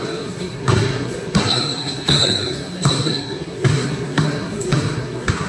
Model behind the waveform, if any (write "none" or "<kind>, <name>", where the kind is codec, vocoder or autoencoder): codec, SNAC